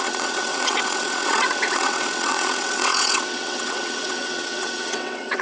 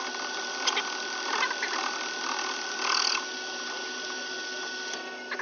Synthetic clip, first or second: first